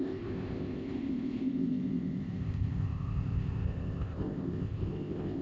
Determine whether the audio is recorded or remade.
remade